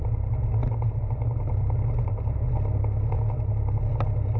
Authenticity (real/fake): real